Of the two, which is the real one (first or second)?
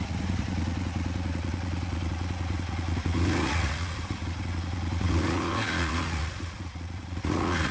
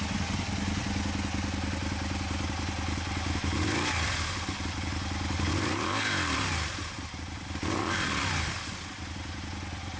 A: second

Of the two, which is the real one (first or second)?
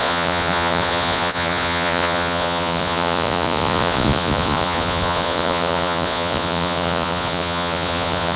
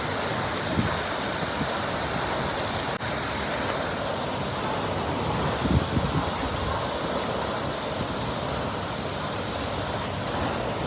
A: second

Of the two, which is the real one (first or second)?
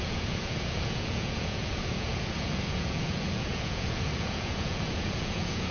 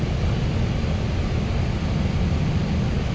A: second